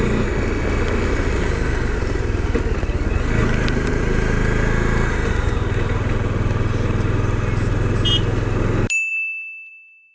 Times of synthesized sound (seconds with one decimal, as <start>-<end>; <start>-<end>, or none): 3.4-4.0